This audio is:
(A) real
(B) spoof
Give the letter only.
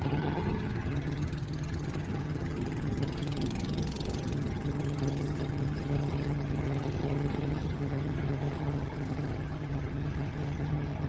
B